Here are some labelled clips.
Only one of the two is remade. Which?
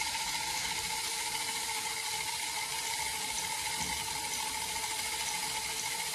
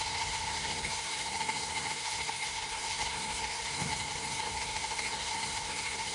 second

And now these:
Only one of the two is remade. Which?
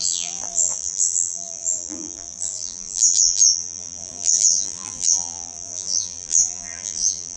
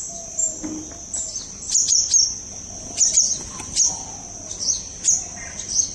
first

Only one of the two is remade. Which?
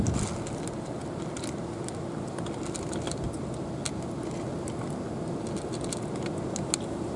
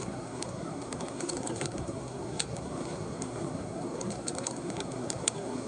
second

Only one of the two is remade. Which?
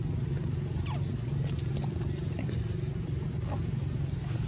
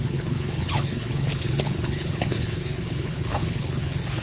second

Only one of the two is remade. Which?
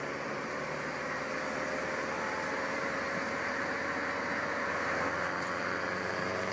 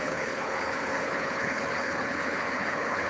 second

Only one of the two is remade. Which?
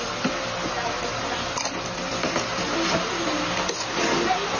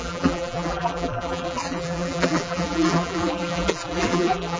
second